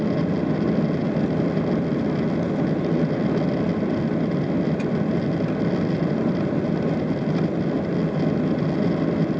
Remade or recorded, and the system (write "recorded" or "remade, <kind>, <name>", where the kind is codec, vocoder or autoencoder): recorded